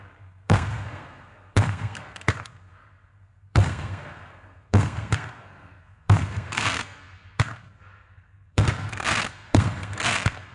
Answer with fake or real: fake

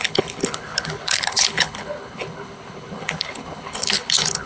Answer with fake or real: fake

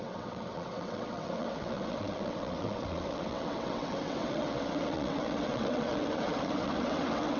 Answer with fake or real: fake